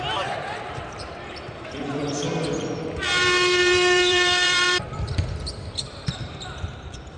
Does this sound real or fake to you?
fake